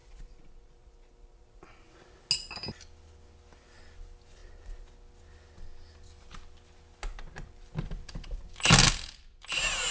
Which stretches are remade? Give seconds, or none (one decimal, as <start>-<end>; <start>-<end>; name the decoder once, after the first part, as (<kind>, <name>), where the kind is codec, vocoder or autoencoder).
0.0-1.8 (vocoder, Vocos)